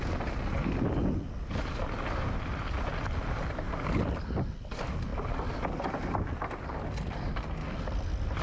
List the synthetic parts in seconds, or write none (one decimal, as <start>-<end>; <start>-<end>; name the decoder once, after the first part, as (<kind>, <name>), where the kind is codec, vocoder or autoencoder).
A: none